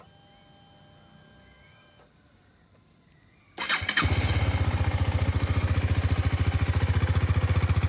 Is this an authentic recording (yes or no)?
yes